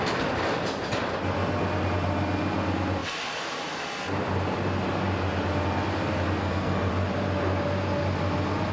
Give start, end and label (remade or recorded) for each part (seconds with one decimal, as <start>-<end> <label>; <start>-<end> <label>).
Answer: 0.0-6.4 recorded; 6.4-6.9 remade; 6.9-8.7 recorded